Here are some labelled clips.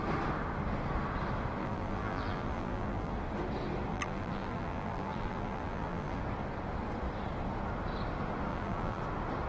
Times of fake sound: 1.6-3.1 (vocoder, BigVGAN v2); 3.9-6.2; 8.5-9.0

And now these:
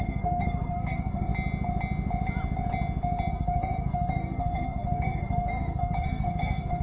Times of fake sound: 0.0-1.3 (codec, SNAC); 3.3-6.8

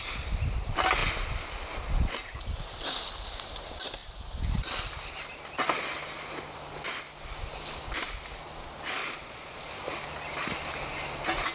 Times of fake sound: 9.0-9.7 (vocoder, Vocos)

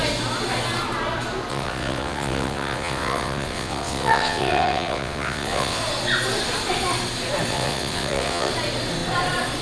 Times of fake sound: 1.5-5.8 (vocoder, WaveNeXt); 7.5-8.5